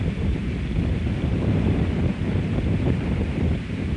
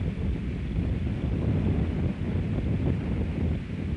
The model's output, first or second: first